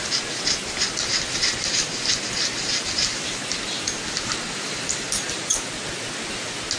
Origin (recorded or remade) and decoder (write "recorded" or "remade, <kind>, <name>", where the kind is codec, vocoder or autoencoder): recorded